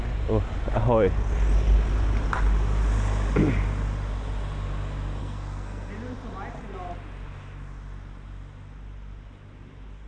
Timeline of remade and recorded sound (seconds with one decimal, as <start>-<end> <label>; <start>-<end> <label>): 0.0-5.2 recorded; 5.2-5.9 remade; 5.9-10.1 recorded